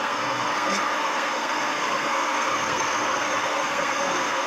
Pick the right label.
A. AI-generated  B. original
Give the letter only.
A